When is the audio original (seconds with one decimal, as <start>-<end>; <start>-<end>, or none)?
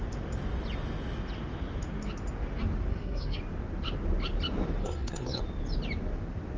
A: 0.0-2.9; 3.4-4.8; 5.4-6.6